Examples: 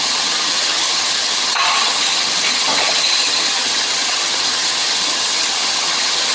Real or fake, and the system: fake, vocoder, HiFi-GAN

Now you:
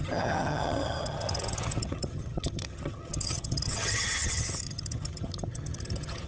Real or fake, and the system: fake, vocoder, HiFi-GAN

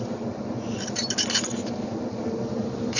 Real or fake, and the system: real